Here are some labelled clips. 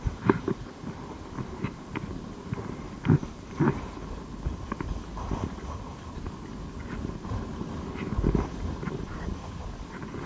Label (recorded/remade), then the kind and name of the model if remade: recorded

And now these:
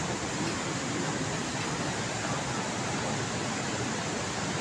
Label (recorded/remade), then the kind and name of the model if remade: recorded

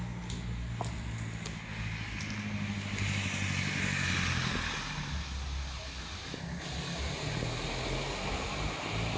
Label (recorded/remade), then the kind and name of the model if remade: recorded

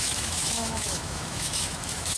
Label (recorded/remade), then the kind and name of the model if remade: remade, autoencoder, DAC-VAE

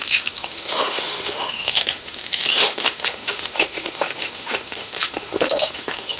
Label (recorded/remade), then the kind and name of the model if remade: remade, autoencoder, DAC-VAE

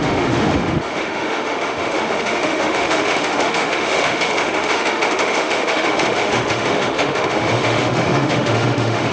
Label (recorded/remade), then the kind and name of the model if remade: remade, autoencoder, DAC-VAE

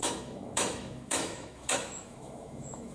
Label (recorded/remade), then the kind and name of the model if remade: remade, autoencoder, DAC-VAE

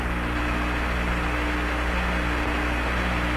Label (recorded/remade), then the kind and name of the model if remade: recorded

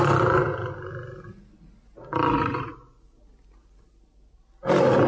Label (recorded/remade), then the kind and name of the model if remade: recorded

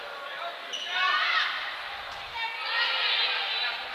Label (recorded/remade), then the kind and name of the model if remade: recorded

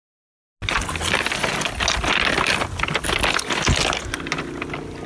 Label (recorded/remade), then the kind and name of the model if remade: recorded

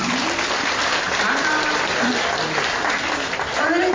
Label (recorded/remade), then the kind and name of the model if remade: recorded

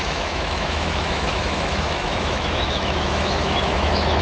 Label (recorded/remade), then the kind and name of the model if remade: remade, autoencoder, DAC-VAE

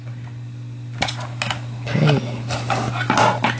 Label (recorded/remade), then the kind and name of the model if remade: recorded